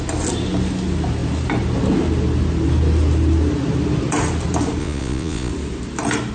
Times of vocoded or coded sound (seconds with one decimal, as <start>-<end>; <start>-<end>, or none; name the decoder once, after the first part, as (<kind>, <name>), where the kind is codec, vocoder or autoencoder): 4.8-5.5 (vocoder, Vocos)